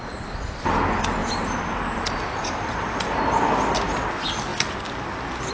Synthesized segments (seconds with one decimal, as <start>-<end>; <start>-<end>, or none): 1.2-4.0

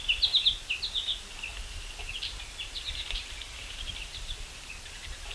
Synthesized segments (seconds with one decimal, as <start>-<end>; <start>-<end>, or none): 1.5-4.7

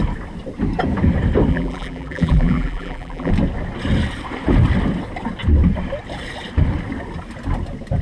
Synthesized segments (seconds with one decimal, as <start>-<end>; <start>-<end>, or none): 1.5-3.3